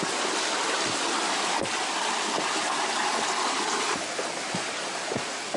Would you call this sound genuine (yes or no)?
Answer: yes